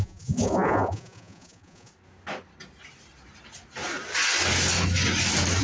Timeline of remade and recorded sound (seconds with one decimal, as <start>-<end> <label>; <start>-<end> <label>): 0.0-1.9 remade; 1.9-5.6 recorded